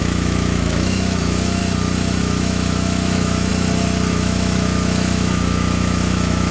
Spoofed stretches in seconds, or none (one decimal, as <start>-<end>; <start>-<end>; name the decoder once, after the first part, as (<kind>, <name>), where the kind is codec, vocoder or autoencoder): 0.0-1.6 (autoencoder, DAC-VAE); 2.2-3.5; 4.1-6.5